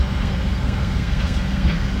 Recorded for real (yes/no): no